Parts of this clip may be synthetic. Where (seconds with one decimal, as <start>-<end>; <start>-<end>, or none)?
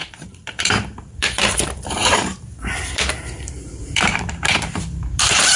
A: 0.0-5.6